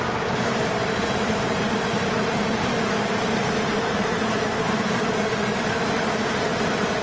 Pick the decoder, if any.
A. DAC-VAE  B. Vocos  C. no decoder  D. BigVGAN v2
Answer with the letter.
D